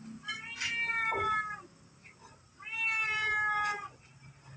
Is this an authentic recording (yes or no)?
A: yes